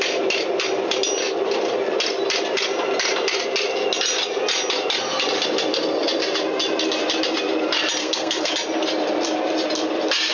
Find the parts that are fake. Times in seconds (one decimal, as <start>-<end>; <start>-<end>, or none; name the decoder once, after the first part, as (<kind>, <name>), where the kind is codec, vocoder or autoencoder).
8.0-8.5 (codec, SNAC)